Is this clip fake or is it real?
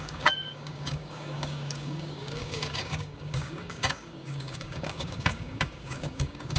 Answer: fake